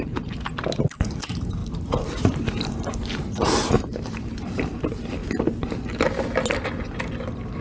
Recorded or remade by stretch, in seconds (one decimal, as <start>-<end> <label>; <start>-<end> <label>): 0.0-5.2 remade; 5.2-7.6 recorded